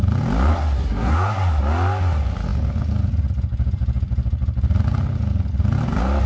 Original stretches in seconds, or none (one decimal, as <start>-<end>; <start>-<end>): 0.0-0.5; 1.6-6.3